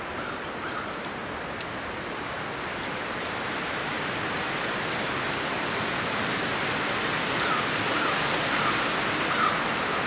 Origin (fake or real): real